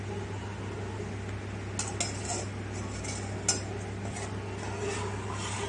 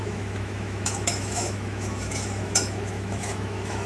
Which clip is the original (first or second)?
first